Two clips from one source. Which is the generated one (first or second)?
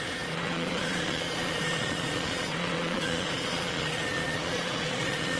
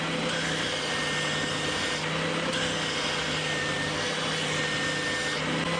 first